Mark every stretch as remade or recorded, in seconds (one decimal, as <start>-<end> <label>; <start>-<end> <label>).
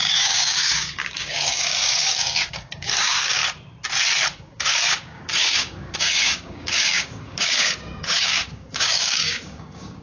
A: 0.0-3.4 remade; 3.4-4.4 recorded; 4.4-10.0 remade